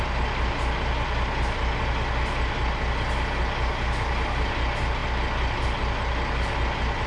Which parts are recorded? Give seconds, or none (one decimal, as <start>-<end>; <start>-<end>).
0.0-7.1

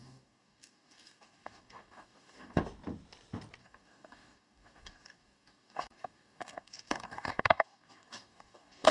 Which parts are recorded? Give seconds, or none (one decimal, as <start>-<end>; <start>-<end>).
2.6-3.6

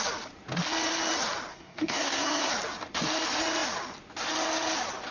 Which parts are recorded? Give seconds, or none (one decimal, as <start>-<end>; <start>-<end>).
0.0-1.5; 2.5-5.1

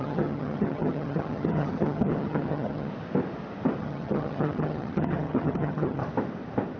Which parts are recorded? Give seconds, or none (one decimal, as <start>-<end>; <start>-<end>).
2.9-3.8; 6.0-6.8

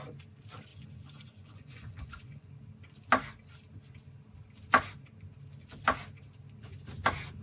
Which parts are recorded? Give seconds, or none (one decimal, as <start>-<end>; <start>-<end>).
0.0-0.7; 2.5-7.4

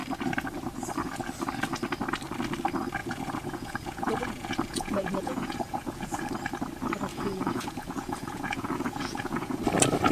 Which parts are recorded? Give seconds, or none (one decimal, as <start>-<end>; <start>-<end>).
0.0-3.0; 6.2-7.1; 9.6-10.1